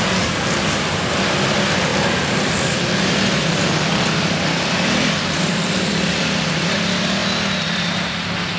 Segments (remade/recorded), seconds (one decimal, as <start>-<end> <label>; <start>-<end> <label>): 0.0-7.2 remade; 7.2-8.0 recorded; 8.0-8.6 remade